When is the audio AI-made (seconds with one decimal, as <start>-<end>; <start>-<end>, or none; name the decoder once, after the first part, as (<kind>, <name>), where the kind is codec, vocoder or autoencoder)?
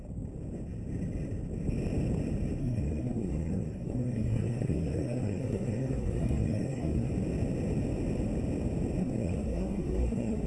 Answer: 2.6-7.1 (codec, SNAC); 9.0-10.5